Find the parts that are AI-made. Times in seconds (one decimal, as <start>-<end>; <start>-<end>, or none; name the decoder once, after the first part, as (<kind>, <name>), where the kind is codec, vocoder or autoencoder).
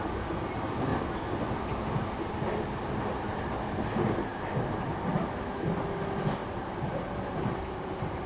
6.4-8.3 (vocoder, BigVGAN v2)